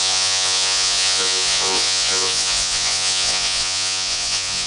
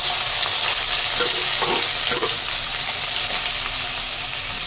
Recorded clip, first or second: second